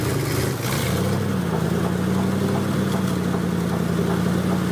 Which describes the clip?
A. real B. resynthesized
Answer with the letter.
A